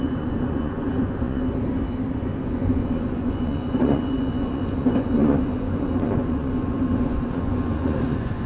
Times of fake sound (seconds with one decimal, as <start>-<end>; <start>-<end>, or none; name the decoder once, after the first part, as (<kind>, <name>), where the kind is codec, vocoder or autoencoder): 0.0-1.4 (vocoder, Vocos); 2.4-8.5